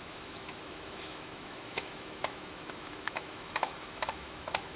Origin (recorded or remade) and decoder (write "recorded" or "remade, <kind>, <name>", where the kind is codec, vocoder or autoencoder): remade, autoencoder, DAC-VAE